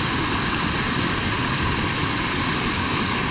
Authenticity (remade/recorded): recorded